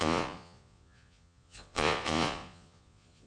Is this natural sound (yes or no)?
no